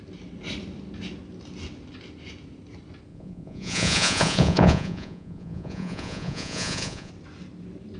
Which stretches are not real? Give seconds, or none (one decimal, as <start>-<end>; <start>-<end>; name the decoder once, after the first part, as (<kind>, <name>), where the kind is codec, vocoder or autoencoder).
3.1-7.1 (vocoder, Vocos)